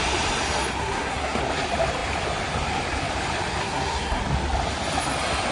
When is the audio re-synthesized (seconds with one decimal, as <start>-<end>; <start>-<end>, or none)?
0.8-1.4; 3.6-4.2